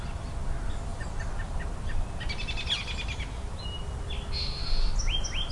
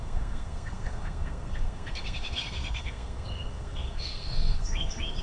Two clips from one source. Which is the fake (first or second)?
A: second